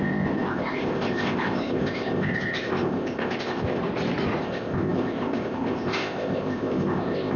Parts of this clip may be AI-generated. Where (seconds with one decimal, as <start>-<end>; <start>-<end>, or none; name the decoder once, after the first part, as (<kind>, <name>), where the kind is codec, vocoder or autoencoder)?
0.0-3.8 (codec, ZipCodec); 4.4-7.4